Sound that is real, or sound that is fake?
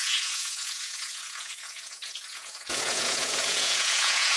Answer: fake